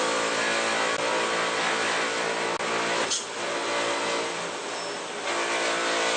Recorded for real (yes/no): yes